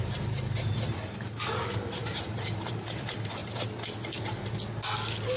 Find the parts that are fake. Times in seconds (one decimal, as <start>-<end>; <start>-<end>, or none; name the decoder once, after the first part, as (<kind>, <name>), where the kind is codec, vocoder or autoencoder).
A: 0.0-3.4 (vocoder, BigVGAN v2)